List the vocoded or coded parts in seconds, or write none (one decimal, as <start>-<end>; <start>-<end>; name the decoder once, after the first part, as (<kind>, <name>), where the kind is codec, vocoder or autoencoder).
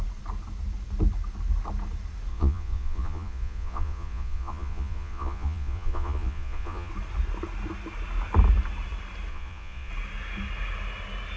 2.3-6.9 (vocoder, Vocos); 9.3-9.9